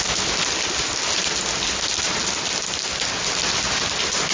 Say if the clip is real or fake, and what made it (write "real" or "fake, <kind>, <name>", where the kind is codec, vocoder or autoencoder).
real